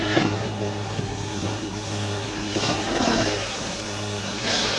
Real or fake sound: fake